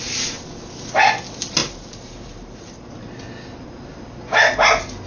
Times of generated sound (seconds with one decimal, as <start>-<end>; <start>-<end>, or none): 1.6-2.9